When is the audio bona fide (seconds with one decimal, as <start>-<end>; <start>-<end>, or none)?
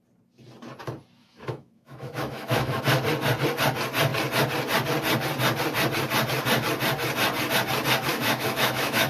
0.0-1.2; 2.8-8.1